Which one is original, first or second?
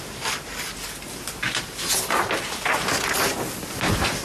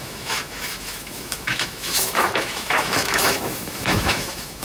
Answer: first